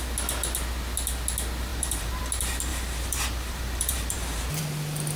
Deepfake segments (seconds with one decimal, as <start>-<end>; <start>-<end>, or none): 1.7-2.2; 2.7-4.6